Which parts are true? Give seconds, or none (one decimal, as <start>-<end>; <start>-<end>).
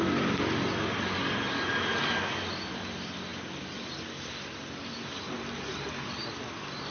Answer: 0.0-6.9